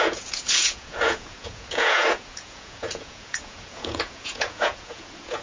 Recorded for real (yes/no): no